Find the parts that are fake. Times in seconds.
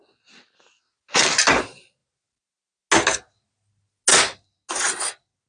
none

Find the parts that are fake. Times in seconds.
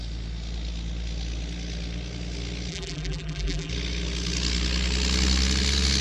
2.7-3.7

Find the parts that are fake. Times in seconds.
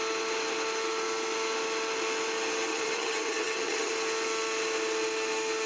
2.7-3.9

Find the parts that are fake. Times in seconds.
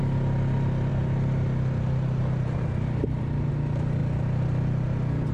none